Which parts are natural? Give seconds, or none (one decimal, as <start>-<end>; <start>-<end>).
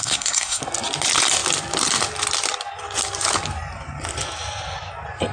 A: 0.6-5.3